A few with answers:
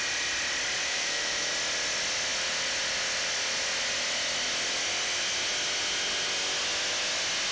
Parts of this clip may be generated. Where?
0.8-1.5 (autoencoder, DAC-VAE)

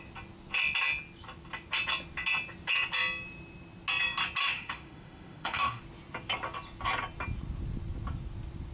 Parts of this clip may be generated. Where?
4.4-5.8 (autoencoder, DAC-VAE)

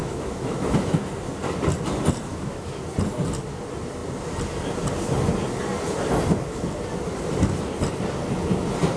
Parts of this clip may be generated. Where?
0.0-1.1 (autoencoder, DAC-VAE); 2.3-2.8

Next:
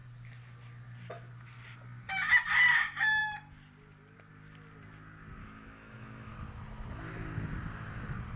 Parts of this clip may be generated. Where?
5.4-6.3 (autoencoder, DAC-VAE)

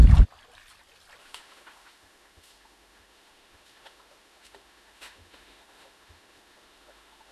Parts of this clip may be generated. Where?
1.2-7.3 (autoencoder, DAC-VAE)